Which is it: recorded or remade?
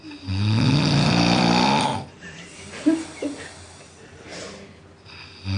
recorded